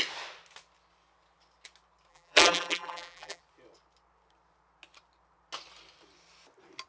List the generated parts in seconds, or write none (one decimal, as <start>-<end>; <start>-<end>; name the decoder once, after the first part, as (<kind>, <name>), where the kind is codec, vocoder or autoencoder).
2.1-3.4 (vocoder, BigVGAN v2)